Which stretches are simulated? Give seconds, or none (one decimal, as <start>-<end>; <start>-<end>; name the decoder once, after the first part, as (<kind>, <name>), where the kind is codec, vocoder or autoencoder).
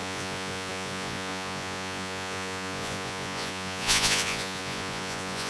0.0-5.5 (vocoder, Vocos)